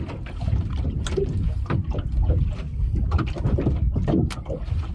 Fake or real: real